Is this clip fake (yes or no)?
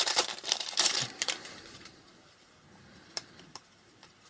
yes